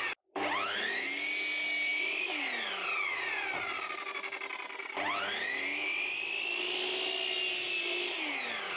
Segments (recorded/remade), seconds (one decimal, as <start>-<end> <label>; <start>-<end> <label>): 0.0-8.8 recorded